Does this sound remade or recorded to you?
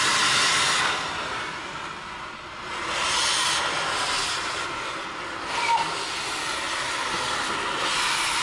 recorded